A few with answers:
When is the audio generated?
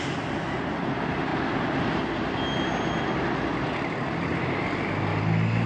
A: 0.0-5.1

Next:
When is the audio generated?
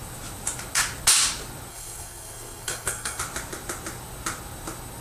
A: 1.7-3.2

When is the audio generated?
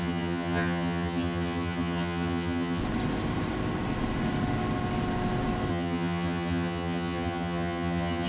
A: 0.0-2.8; 5.7-8.3